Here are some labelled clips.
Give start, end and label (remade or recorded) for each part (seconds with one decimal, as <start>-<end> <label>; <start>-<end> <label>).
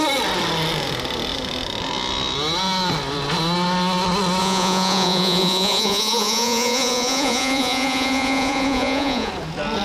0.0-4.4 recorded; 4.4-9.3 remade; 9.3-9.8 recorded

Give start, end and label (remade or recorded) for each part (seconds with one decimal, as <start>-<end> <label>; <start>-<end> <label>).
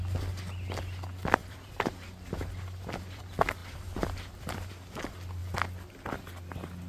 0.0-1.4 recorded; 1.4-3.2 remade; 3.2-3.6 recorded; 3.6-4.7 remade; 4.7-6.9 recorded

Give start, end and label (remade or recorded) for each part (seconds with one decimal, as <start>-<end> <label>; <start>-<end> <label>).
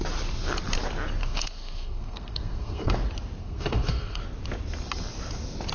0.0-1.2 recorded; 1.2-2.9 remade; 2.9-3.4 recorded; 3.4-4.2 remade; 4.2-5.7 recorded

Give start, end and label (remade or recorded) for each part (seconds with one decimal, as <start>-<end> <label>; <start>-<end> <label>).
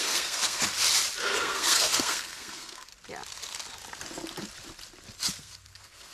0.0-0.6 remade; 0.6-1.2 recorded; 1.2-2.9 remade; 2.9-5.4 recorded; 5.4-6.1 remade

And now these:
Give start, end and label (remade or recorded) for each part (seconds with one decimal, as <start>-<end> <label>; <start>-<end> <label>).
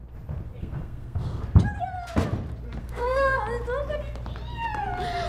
0.0-0.6 recorded; 0.6-1.4 remade; 1.4-2.8 recorded; 2.8-3.4 remade; 3.4-5.3 recorded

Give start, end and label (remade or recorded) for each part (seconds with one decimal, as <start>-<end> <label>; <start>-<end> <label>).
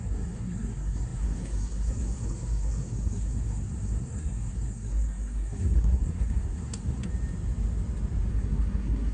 0.0-7.1 remade; 7.1-8.3 recorded; 8.3-9.1 remade